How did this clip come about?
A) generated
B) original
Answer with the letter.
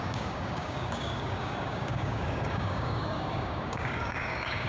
A